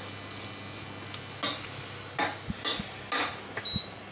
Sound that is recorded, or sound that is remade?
recorded